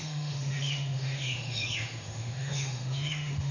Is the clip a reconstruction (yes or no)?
yes